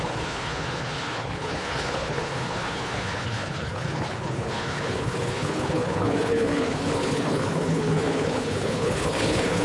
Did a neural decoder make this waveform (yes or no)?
yes